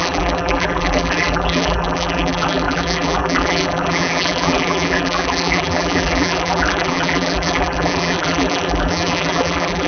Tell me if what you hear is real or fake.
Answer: fake